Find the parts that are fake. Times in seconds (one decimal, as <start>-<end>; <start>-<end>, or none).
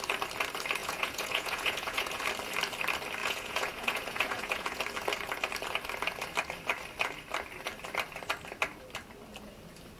0.8-2.2; 3.2-4.8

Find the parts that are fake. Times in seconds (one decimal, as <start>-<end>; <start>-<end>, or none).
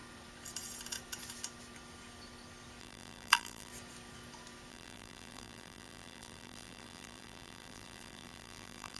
2.8-3.7; 4.7-9.0